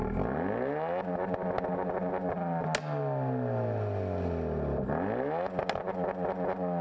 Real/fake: real